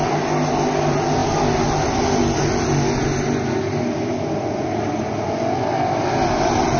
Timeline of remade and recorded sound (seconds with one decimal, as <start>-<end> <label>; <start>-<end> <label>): 0.0-6.8 recorded